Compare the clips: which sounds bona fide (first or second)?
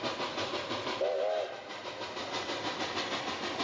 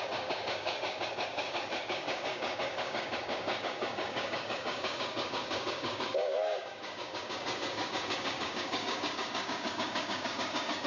first